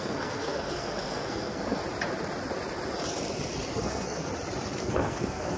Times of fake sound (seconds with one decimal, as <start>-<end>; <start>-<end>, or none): 0.0-1.8; 3.7-4.3; 4.8-5.6